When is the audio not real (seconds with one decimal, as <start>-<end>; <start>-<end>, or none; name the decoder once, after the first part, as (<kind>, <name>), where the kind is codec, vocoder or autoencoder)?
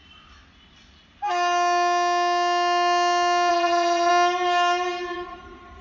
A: 3.5-4.1 (vocoder, Vocos); 5.1-5.8